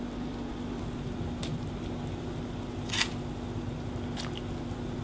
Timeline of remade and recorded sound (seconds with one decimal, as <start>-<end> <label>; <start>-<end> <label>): 0.0-5.0 recorded